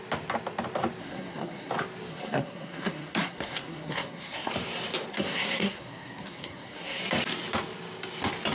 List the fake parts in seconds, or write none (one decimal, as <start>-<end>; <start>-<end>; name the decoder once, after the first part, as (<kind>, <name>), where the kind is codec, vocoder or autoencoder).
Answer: 1.0-1.7 (codec, SNAC); 2.1-4.5; 5.1-7.0